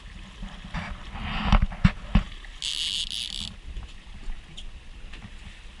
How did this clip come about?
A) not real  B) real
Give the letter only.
B